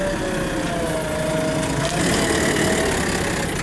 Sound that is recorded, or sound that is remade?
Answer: recorded